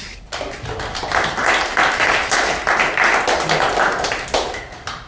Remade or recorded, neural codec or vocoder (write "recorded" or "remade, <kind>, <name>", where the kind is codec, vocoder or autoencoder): recorded